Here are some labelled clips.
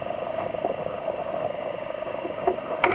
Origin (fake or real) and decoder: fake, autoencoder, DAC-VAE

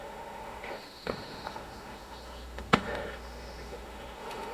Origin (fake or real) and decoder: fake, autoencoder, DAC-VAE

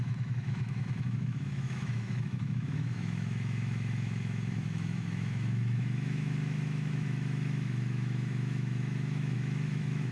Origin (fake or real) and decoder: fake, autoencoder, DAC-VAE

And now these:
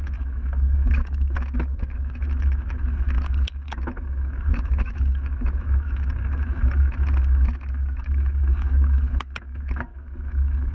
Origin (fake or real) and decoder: fake, autoencoder, DAC-VAE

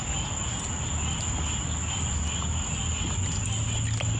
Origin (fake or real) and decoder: real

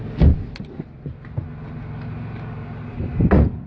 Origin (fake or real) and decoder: real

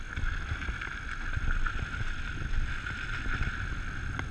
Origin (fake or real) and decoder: real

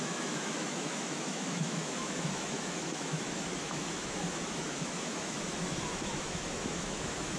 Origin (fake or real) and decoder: fake, autoencoder, DAC-VAE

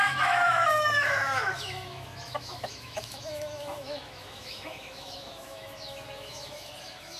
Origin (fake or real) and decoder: fake, autoencoder, DAC-VAE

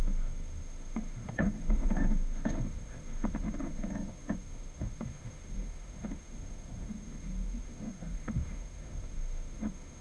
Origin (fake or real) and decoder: fake, autoencoder, DAC-VAE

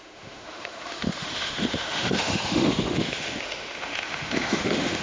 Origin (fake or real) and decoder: fake, autoencoder, DAC-VAE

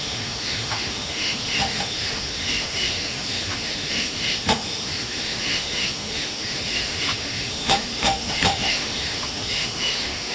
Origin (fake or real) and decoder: fake, autoencoder, DAC-VAE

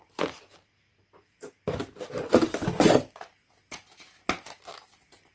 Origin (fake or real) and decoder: real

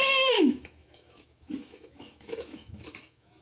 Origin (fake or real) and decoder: fake, autoencoder, DAC-VAE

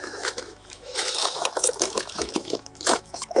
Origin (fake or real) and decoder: fake, autoencoder, DAC-VAE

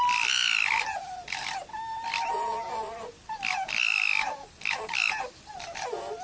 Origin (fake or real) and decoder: real